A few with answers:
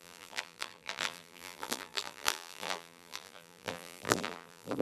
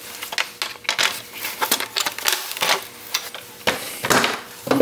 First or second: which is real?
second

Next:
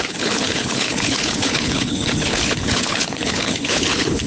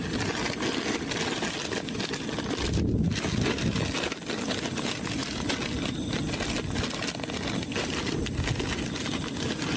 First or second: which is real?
second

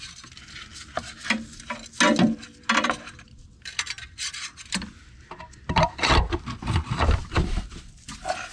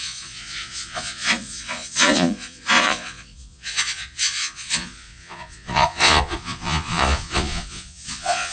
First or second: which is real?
first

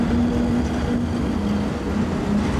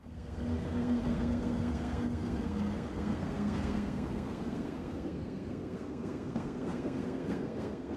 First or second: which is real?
first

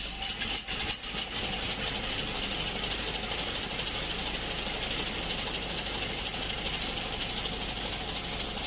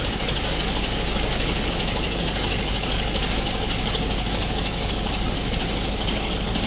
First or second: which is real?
first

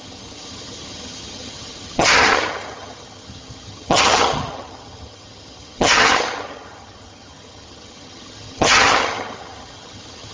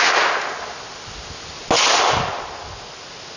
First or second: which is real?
second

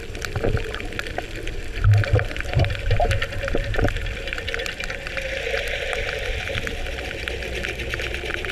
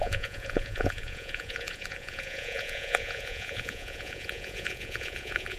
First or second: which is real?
first